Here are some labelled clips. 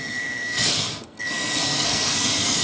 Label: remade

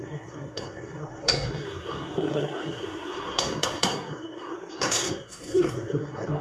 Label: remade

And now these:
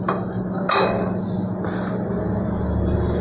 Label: recorded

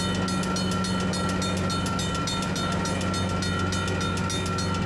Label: recorded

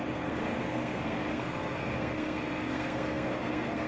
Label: remade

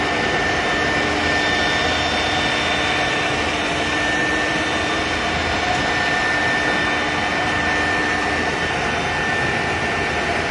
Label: recorded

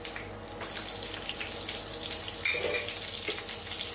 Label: recorded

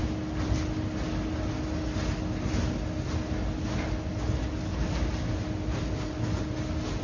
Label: recorded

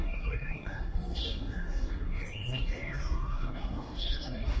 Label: remade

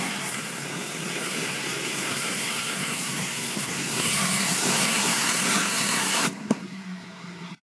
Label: remade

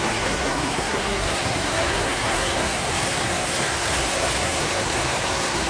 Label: remade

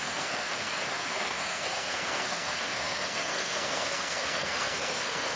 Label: remade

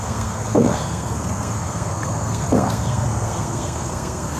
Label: remade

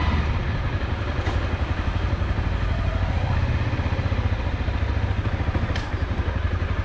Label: recorded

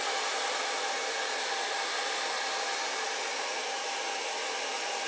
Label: recorded